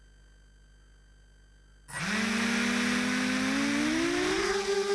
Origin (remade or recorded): recorded